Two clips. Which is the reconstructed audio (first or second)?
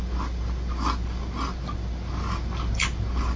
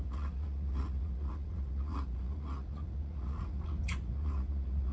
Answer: second